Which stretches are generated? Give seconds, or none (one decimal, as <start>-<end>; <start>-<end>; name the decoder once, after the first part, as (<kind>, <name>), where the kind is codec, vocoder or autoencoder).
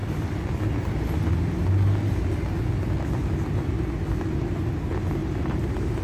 5.2-6.0 (vocoder, BigVGAN v2)